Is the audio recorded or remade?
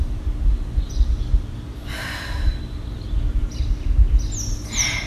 recorded